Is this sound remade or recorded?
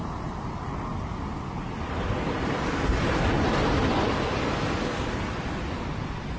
recorded